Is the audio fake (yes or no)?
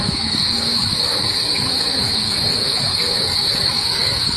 yes